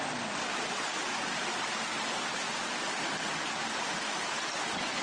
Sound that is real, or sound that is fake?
real